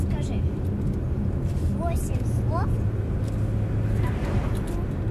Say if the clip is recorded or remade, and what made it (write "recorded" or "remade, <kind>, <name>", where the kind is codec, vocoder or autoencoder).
recorded